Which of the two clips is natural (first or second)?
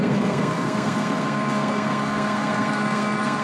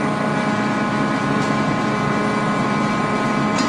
second